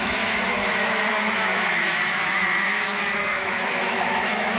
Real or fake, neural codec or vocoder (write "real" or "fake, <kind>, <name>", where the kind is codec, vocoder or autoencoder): fake, autoencoder, DAC-VAE